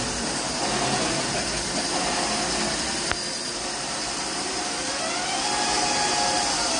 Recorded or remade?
recorded